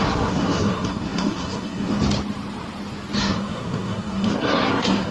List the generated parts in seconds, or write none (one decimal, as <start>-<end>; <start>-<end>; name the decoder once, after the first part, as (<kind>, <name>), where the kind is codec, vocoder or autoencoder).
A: 0.0-2.0 (codec, SNAC); 3.2-5.1